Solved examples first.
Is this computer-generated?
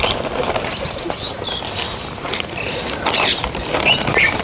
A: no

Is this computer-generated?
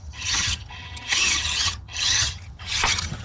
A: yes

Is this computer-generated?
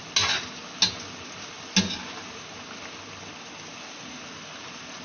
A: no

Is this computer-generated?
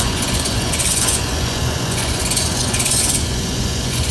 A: yes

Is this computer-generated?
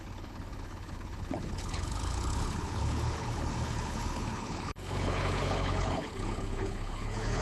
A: yes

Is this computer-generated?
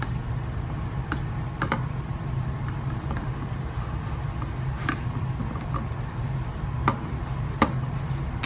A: no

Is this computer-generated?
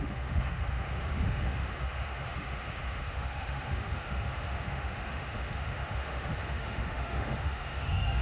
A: yes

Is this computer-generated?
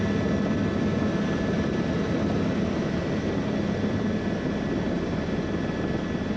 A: no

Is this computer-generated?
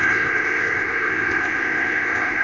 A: yes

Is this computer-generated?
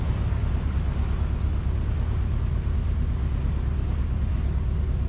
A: no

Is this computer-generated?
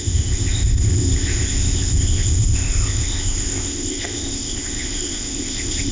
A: yes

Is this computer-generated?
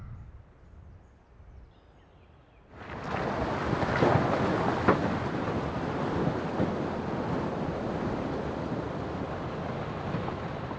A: no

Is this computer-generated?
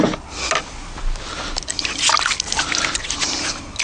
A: no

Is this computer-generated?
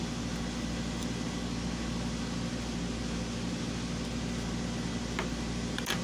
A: no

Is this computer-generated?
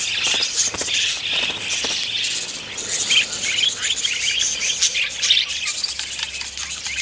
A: no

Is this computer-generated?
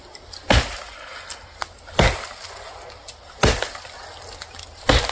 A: no